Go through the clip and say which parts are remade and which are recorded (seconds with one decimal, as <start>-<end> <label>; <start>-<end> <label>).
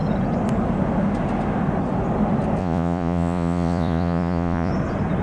0.0-2.6 recorded; 2.6-4.7 remade; 4.7-5.2 recorded